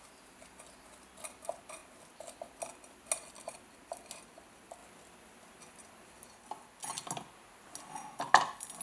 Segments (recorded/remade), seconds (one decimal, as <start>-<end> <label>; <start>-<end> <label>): 0.0-8.8 recorded